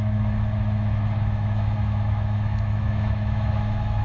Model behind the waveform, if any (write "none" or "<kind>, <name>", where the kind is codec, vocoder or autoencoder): autoencoder, DAC-VAE